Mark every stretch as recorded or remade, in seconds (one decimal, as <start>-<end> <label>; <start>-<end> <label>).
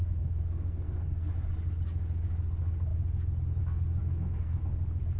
0.0-1.3 remade; 1.3-4.0 recorded; 4.0-4.6 remade; 4.6-5.2 recorded